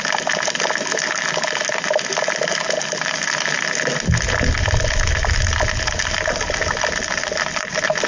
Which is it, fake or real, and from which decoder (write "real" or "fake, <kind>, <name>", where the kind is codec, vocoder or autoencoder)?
real